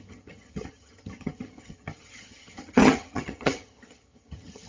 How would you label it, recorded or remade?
remade